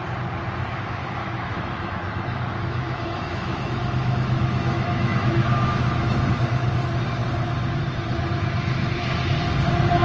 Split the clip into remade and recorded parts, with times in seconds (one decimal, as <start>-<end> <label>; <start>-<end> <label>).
0.0-1.2 recorded; 1.2-6.3 remade; 6.3-10.0 recorded